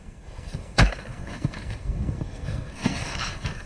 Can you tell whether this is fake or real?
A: fake